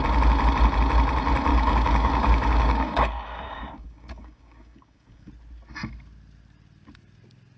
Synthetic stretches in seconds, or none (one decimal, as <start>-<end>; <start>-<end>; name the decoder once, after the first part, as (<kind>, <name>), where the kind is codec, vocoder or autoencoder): 1.5-5.3 (codec, DAC)